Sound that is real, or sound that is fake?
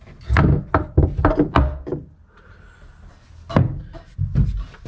real